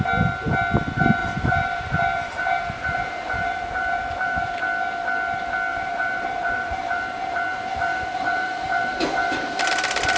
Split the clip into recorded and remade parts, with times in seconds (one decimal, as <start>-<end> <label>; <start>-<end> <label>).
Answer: 0.0-1.2 recorded; 1.2-4.6 remade; 4.6-5.7 recorded; 5.7-9.7 remade; 9.7-10.2 recorded